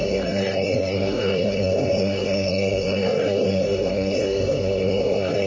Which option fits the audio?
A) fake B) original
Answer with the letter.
A